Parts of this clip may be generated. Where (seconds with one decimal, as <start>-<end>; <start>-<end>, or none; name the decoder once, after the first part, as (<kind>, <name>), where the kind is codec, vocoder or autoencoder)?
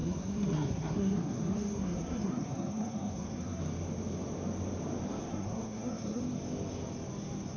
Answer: 0.0-3.6 (codec, SNAC); 5.3-6.2